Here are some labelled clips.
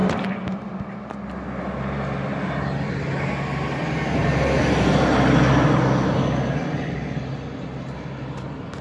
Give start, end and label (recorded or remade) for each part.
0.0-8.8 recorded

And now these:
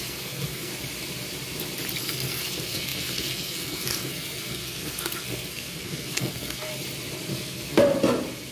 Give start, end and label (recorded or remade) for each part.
0.0-0.7 remade; 0.7-2.0 recorded; 2.0-6.7 remade; 6.7-7.3 recorded; 7.3-7.8 remade; 7.8-8.5 recorded

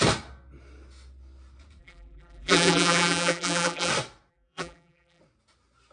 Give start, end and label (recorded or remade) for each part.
0.0-1.8 recorded; 1.8-3.9 remade; 3.9-4.3 recorded; 4.3-5.2 remade; 5.2-5.9 recorded

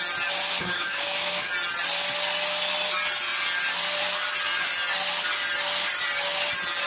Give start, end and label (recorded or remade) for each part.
0.0-0.6 recorded; 0.6-1.5 remade; 1.5-6.9 recorded